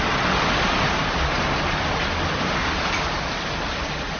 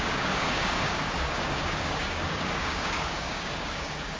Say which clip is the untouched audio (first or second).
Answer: first